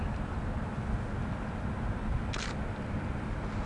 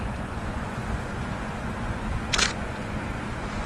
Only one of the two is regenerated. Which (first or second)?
second